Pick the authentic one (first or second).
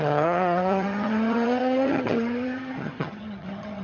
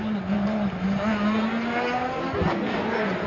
second